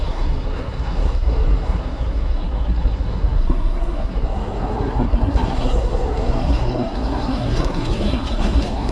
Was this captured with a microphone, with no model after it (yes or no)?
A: no